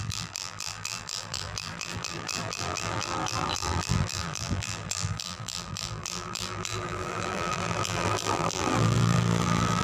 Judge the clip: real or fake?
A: fake